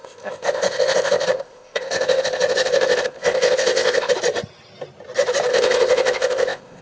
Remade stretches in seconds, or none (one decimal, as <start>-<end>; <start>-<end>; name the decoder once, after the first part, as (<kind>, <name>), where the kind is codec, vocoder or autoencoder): 0.0-4.1 (codec, ZipCodec); 5.5-6.8